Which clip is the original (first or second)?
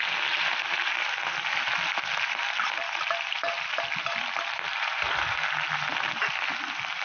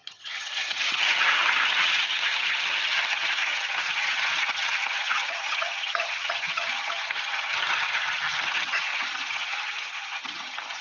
first